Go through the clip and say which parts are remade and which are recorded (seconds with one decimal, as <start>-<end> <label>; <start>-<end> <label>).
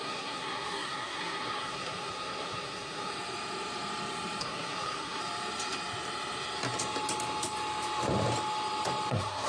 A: 0.0-3.1 remade; 3.1-4.4 recorded; 4.4-5.2 remade; 5.2-9.1 recorded; 9.1-9.5 remade